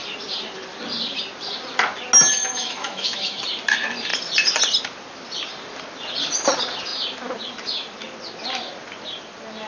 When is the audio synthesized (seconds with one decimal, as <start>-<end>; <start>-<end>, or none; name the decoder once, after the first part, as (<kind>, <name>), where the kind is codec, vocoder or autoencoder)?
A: 2.3-3.4 (autoencoder, DAC-VAE)

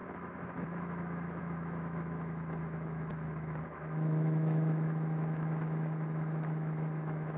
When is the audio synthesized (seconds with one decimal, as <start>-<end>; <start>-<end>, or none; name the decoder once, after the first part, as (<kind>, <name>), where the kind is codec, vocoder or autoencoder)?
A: 0.0-7.4 (autoencoder, DAC-VAE)